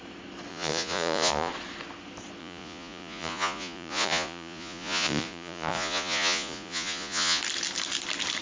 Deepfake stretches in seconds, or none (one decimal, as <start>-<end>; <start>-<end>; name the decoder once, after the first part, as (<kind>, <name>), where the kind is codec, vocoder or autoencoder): 0.5-1.5 (vocoder, Vocos); 2.4-7.4